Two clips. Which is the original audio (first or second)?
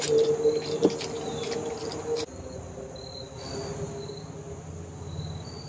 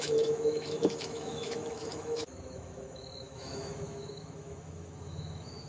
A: first